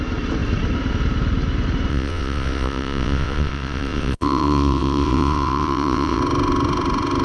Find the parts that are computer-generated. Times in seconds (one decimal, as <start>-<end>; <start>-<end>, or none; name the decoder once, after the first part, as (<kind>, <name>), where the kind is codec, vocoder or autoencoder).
1.9-6.2 (vocoder, WaveNeXt)